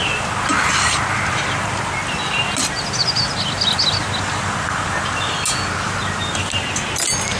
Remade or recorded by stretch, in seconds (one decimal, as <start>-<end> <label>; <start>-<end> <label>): 0.0-7.4 recorded